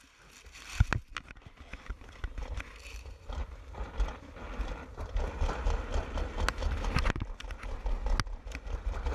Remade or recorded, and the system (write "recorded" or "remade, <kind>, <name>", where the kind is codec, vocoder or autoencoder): recorded